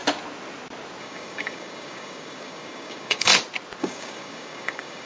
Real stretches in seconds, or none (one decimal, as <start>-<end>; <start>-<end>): 0.0-1.0; 3.3-3.8